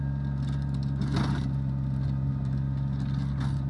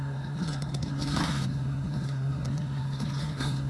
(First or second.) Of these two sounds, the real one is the first